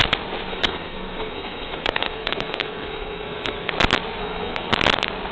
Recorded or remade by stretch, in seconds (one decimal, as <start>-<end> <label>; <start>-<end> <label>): 0.0-0.5 recorded; 0.5-3.7 remade; 3.7-4.2 recorded; 4.2-4.7 remade; 4.7-5.3 recorded